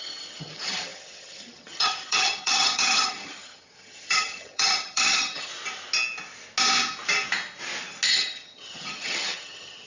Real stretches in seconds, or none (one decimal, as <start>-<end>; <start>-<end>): 5.5-8.1